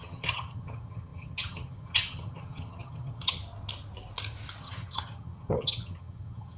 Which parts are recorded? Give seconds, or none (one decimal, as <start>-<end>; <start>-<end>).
3.4-4.6